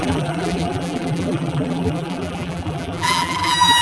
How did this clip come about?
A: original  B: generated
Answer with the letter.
B